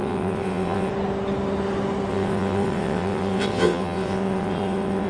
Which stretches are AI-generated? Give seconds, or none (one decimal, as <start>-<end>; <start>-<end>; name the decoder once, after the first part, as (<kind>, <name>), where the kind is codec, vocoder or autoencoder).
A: 0.0-0.9 (vocoder, WaveNeXt); 2.1-5.1